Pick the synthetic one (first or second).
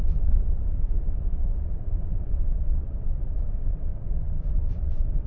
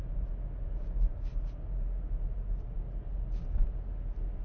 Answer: first